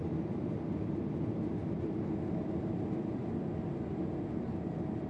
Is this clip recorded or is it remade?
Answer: recorded